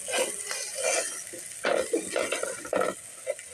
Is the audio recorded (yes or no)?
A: yes